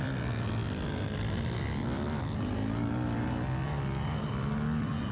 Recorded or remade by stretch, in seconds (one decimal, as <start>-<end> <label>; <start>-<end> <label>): 0.0-5.1 recorded